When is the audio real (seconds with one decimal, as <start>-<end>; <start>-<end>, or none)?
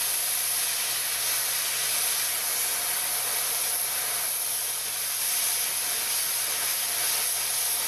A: 0.0-7.9